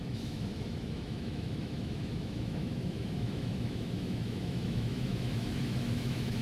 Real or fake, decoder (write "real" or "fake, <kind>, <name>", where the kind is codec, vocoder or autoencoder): fake, autoencoder, DAC-VAE